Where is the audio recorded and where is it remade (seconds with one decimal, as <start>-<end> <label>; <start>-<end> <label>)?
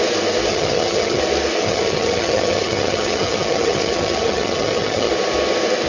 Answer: 0.0-0.5 recorded; 0.5-1.2 remade; 1.2-1.6 recorded; 1.6-5.1 remade; 5.1-5.9 recorded